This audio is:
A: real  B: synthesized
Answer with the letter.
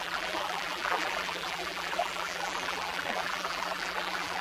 B